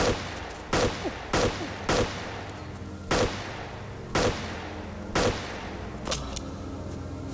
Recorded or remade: recorded